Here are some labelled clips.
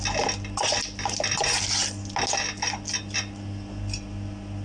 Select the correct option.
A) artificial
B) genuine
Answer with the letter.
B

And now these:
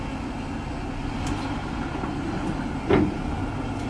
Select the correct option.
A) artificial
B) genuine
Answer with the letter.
B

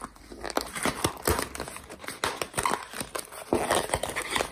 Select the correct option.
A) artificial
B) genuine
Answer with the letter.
B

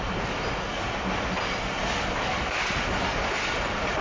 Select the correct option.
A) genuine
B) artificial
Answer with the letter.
A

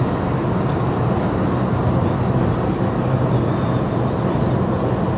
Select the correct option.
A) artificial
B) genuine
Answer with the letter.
B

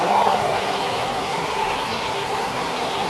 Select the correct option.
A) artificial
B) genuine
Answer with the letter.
A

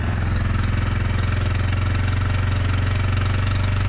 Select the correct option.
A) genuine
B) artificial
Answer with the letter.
A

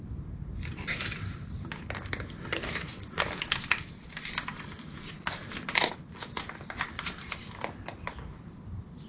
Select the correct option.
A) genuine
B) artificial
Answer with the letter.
A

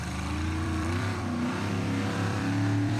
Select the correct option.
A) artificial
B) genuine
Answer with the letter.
A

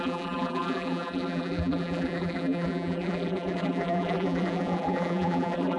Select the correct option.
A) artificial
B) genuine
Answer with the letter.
A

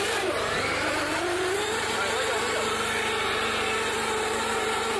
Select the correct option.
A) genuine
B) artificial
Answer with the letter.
A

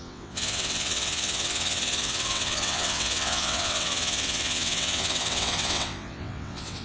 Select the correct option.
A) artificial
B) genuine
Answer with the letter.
A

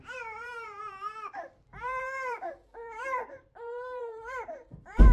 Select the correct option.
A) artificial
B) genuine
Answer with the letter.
A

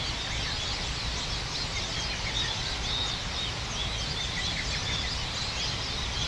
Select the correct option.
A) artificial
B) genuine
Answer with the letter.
B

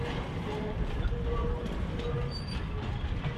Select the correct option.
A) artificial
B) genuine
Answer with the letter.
B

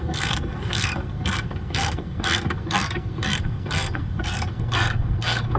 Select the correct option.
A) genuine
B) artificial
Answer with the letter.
B